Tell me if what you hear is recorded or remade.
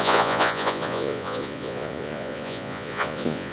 remade